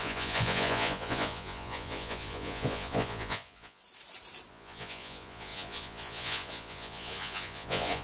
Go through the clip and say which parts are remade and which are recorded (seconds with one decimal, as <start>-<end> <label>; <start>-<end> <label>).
0.0-3.8 remade; 3.8-4.5 recorded; 4.5-8.0 remade